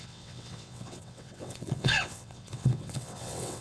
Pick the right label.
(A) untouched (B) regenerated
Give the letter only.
B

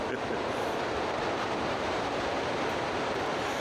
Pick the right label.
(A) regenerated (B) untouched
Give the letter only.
A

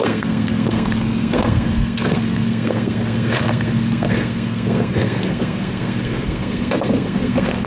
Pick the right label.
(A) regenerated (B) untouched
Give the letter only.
A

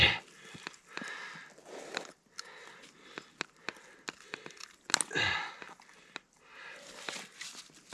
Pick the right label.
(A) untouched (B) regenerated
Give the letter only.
A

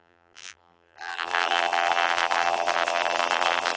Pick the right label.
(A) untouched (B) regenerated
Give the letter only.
B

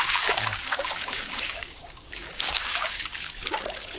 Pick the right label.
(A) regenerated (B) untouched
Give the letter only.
A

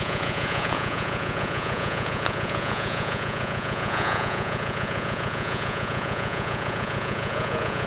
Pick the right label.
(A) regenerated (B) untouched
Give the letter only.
A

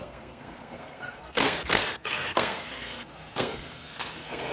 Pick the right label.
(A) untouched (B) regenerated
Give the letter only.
B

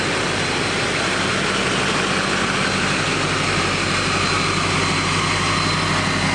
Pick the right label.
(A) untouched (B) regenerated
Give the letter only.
A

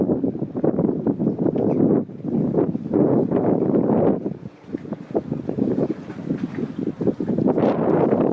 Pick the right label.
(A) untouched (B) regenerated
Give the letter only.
A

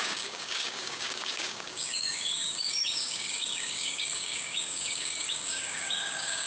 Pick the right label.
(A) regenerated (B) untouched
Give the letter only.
A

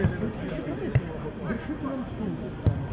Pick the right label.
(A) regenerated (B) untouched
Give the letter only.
B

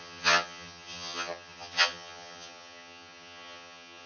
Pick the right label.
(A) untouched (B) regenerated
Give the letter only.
B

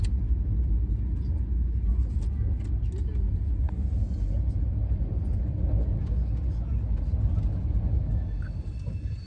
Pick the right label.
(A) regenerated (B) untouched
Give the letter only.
B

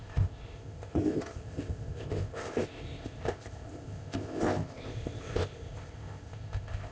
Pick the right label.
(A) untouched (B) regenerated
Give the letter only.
B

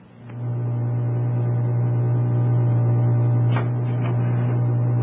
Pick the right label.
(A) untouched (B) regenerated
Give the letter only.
A